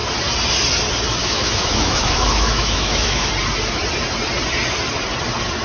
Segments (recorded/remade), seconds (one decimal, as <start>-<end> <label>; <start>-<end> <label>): 0.0-1.2 recorded; 1.2-3.3 remade; 3.3-5.6 recorded

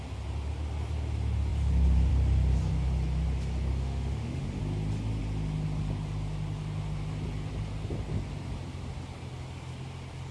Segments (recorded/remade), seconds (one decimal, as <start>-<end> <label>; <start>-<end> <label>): 0.0-3.7 recorded; 3.7-4.6 remade; 4.6-10.3 recorded